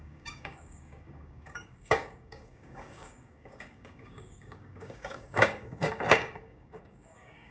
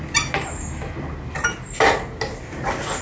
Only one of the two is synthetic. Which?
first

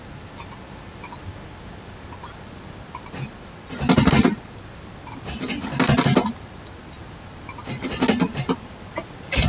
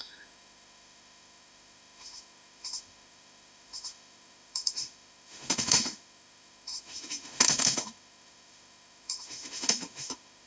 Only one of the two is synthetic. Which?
second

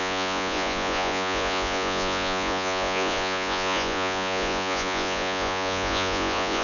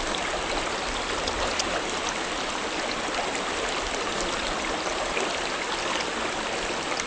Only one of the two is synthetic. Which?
first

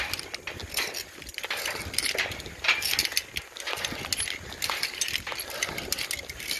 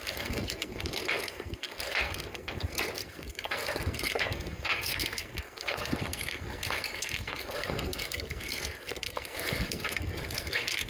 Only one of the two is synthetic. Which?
second